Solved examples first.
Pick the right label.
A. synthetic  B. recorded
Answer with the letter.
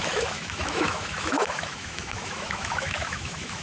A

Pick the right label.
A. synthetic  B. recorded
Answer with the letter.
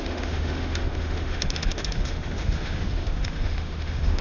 A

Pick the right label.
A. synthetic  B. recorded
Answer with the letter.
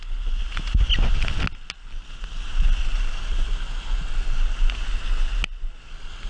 B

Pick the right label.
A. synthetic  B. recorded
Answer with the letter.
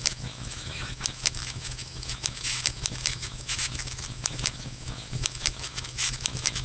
A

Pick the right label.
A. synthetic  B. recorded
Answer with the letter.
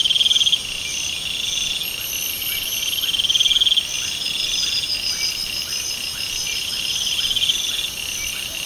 B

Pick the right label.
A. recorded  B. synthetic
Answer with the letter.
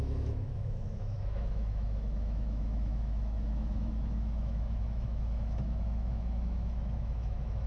B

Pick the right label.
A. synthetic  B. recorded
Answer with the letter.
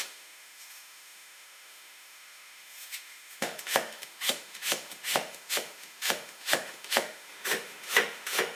A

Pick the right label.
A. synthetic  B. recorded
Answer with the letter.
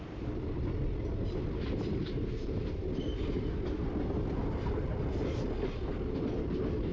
B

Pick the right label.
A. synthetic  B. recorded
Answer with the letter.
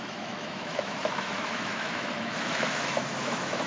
A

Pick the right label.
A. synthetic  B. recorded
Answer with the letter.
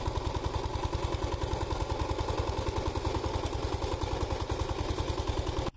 B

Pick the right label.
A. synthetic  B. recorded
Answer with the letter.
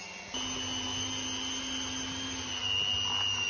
B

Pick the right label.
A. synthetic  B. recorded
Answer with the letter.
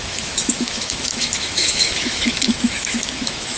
A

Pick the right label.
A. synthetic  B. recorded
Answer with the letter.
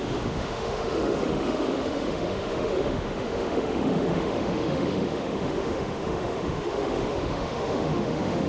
A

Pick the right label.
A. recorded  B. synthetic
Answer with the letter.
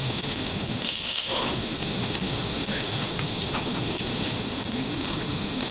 B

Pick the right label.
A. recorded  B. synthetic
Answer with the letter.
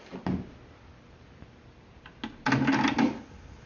A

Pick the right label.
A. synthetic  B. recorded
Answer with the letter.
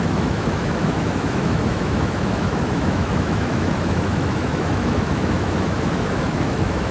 A